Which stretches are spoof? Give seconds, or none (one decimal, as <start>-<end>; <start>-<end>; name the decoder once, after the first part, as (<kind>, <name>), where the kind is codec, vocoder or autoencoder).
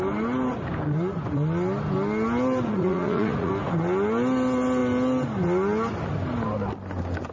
2.7-3.5 (vocoder, Vocos)